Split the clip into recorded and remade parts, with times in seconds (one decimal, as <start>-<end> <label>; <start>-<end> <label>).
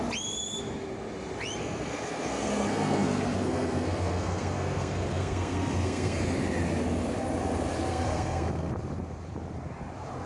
0.0-1.6 recorded; 1.6-6.2 remade; 6.2-7.9 recorded; 7.9-8.7 remade; 8.7-10.3 recorded